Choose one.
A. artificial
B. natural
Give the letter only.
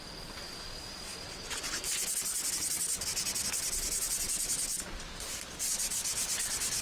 B